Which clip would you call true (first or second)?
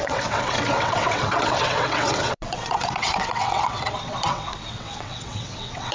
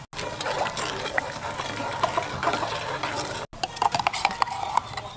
second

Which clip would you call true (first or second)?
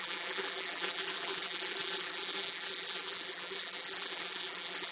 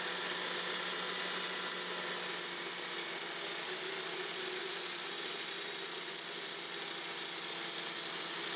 second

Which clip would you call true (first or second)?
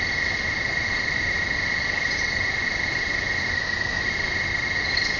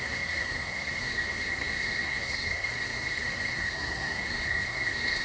first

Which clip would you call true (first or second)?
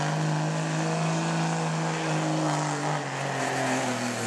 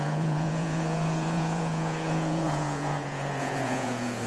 first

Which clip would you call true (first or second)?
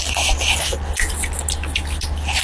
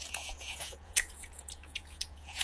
first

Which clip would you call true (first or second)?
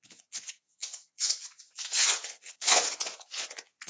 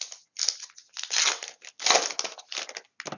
second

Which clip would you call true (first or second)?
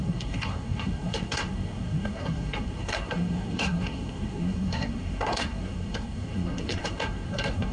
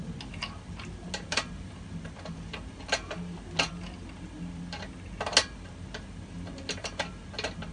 second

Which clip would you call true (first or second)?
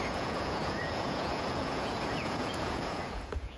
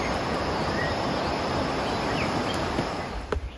second